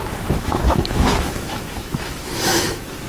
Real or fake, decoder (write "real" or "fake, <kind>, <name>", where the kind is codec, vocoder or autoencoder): fake, autoencoder, DAC-VAE